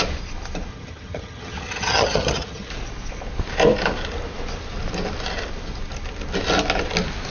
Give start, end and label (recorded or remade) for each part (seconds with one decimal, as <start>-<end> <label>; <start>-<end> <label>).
0.0-0.7 recorded; 0.7-2.7 remade; 2.7-7.3 recorded